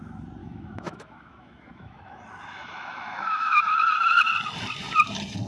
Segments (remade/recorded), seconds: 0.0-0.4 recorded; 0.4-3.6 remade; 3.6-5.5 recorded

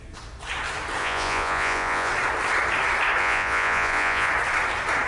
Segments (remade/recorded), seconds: 0.0-1.0 recorded; 1.0-2.1 remade; 2.1-3.2 recorded; 3.2-4.3 remade; 4.3-5.1 recorded

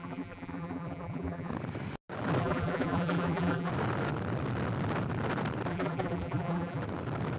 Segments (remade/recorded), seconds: 0.0-1.5 remade; 1.5-2.4 recorded; 2.4-3.7 remade; 3.7-5.7 recorded; 5.7-6.8 remade; 6.8-7.4 recorded

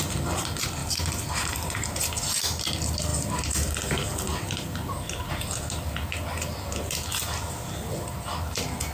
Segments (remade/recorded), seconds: 0.0-8.9 recorded

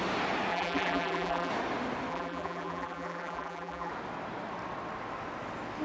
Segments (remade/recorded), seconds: 0.0-0.5 recorded; 0.5-1.5 remade; 1.5-2.1 recorded; 2.1-3.9 remade; 3.9-5.8 recorded

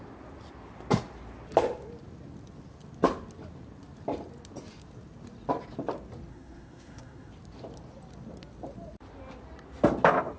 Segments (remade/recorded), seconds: 0.0-6.3 recorded; 6.3-7.3 remade; 7.3-10.4 recorded

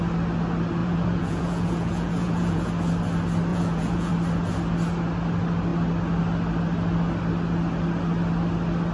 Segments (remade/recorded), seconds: 0.0-0.8 recorded; 0.8-2.7 remade; 2.7-3.5 recorded; 3.5-4.1 remade; 4.1-8.9 recorded